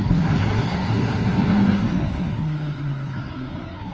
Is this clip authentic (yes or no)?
no